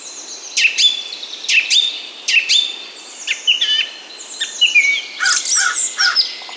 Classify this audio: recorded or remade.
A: recorded